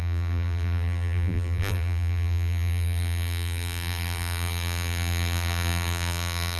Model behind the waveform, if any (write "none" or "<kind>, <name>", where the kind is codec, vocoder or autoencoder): vocoder, BigVGAN v2